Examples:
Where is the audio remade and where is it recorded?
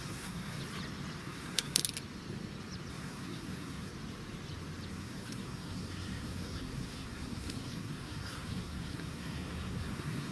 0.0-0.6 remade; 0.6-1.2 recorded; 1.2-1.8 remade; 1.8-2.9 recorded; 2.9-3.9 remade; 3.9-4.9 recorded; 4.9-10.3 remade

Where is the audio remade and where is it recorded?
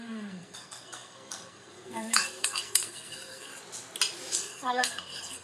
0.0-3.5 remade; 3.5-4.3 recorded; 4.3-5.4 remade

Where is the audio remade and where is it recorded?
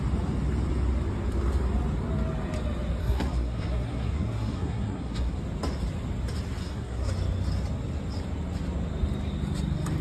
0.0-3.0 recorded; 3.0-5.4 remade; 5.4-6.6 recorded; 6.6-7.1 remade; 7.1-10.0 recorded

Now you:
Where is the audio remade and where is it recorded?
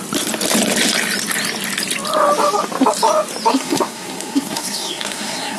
0.0-3.5 recorded; 3.5-5.6 remade